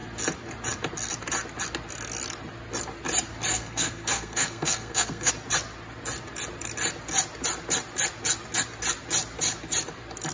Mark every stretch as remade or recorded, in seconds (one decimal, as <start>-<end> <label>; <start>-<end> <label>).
0.0-3.5 recorded; 3.5-5.3 remade; 5.3-10.3 recorded